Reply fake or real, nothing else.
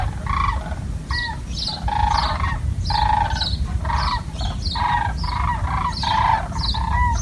real